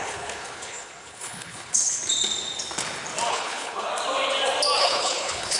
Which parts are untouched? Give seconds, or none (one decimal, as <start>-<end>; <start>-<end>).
2.0-3.3; 3.9-4.8